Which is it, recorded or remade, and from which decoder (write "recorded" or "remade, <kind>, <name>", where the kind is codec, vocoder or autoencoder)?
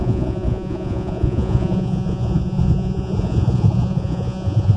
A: remade, vocoder, Vocos